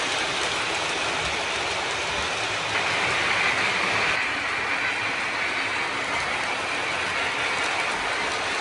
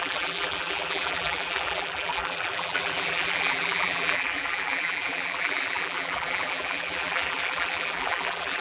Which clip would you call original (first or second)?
first